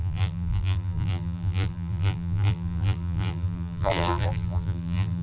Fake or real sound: fake